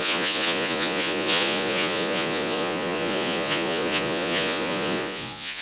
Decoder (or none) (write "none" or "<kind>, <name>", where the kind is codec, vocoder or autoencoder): vocoder, Vocos